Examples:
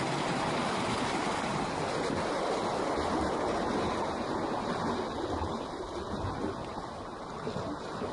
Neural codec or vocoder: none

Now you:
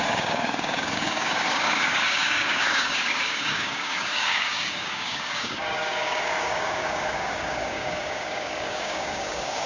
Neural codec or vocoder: codec, DAC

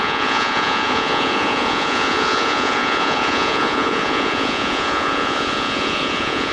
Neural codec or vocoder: vocoder, Vocos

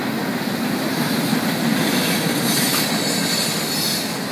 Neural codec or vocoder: none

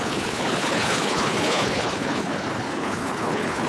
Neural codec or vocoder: codec, HILCodec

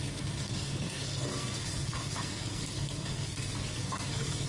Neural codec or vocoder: codec, SNAC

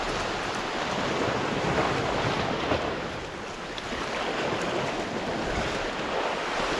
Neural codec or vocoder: none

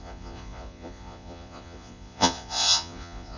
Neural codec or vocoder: vocoder, Vocos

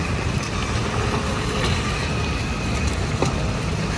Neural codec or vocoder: none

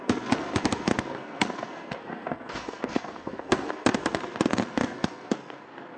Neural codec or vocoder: codec, SNAC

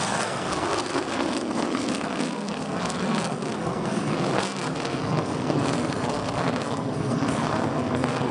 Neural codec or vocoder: codec, SNAC